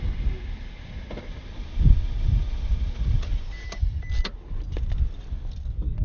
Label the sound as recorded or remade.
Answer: recorded